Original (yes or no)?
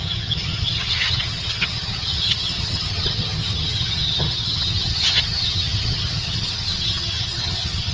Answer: no